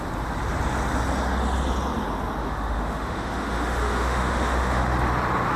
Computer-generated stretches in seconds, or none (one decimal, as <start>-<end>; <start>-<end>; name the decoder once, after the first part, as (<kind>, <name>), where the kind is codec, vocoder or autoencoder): 2.4-4.9 (autoencoder, DAC-VAE)